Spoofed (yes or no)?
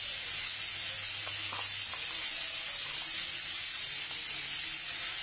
no